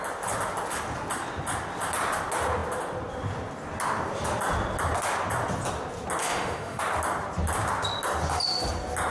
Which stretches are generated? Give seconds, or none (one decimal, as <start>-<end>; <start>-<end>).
6.2-6.8